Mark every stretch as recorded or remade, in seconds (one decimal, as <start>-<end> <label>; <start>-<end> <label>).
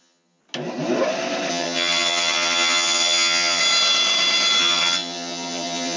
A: 0.0-0.4 remade; 0.4-1.5 recorded; 1.5-3.6 remade; 3.6-4.6 recorded; 4.6-6.0 remade